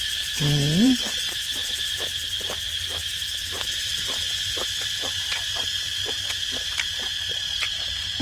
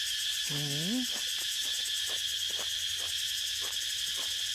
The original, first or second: second